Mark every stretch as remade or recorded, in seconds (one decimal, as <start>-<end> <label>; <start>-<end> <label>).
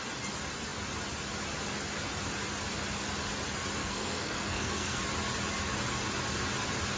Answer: 0.0-3.8 recorded; 3.8-5.0 remade; 5.0-7.0 recorded